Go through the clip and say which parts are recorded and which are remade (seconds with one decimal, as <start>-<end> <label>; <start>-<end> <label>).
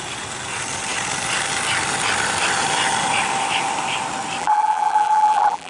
0.0-4.4 recorded; 4.4-5.7 remade